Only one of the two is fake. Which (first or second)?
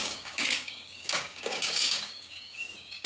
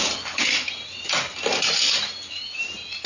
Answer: first